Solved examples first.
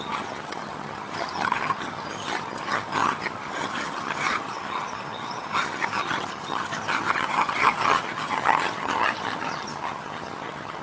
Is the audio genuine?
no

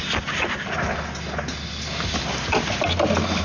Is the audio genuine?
yes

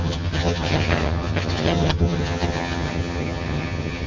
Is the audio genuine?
no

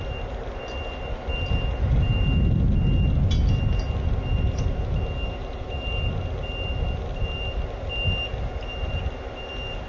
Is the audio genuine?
yes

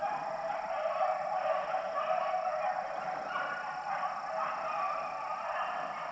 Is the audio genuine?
yes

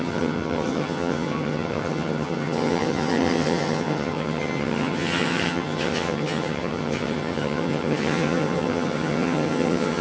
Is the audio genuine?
no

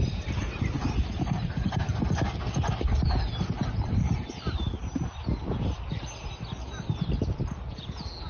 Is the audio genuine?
yes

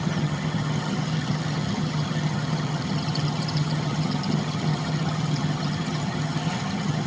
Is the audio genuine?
no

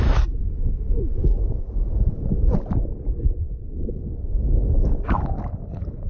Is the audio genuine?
yes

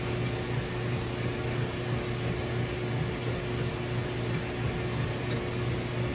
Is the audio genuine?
yes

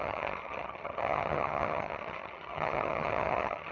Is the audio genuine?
no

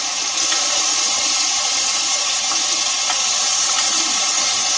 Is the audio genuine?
yes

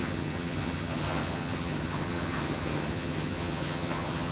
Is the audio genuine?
no